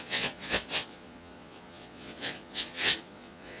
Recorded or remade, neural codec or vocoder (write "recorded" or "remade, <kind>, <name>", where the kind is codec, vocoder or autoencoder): remade, vocoder, Vocos